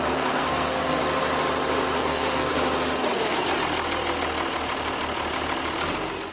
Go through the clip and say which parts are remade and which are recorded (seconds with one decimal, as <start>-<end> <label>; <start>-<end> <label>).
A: 0.0-1.0 remade; 1.0-2.0 recorded; 2.0-2.5 remade; 2.5-6.3 recorded